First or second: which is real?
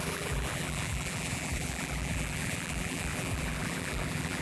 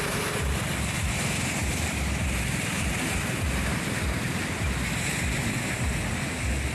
second